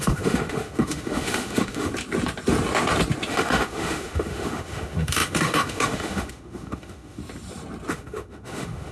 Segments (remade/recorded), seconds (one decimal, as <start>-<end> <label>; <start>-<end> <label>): 0.0-1.9 remade; 1.9-3.3 recorded; 3.3-7.2 remade; 7.2-7.9 recorded; 7.9-8.9 remade